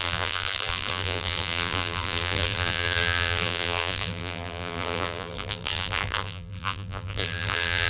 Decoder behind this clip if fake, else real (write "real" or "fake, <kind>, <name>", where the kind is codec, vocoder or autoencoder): fake, vocoder, BigVGAN v2